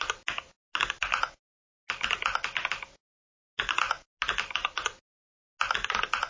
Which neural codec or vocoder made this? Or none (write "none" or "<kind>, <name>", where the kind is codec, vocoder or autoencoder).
none